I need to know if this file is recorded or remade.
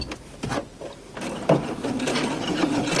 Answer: recorded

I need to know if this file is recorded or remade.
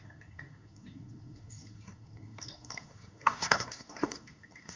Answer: remade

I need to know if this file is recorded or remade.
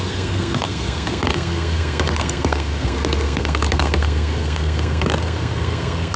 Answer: remade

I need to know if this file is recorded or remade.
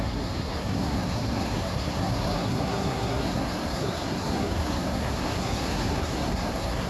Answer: remade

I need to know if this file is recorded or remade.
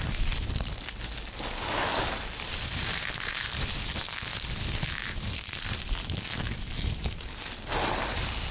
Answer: recorded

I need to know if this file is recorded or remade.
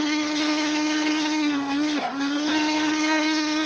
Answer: remade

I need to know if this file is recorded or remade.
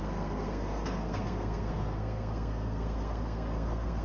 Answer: remade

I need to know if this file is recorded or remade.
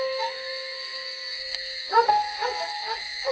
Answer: remade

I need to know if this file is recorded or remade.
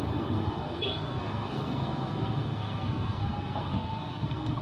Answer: remade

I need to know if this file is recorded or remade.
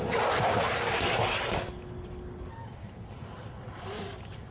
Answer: recorded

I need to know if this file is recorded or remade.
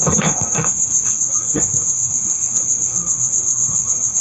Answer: remade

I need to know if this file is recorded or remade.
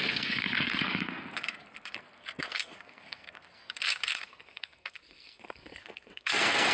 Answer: remade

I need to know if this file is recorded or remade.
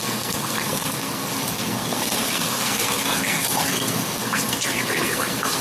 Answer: remade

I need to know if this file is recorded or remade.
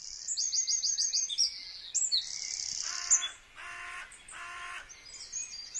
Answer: recorded